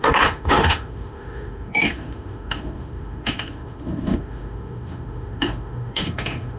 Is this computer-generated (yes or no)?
yes